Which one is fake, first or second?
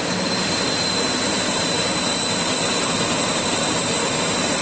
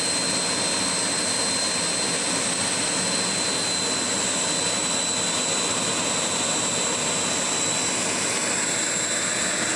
first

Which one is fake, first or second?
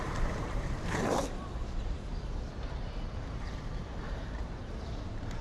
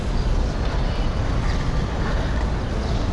first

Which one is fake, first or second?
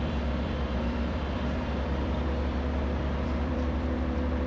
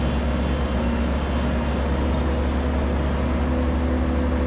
first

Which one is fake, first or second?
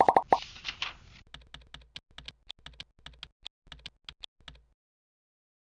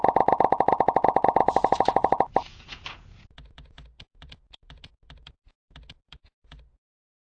second